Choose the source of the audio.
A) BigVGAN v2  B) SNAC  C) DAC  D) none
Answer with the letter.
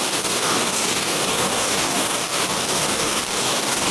C